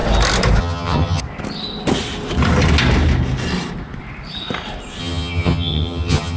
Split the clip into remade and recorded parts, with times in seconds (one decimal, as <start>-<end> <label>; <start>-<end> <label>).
0.0-0.6 recorded; 0.6-1.2 remade; 1.2-5.0 recorded; 5.0-6.4 remade